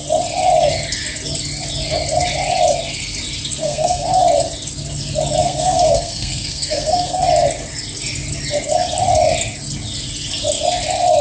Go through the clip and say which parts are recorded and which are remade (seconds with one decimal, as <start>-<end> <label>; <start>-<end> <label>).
0.0-3.6 recorded; 3.6-4.2 remade; 4.2-5.4 recorded; 5.4-7.2 remade; 7.2-11.2 recorded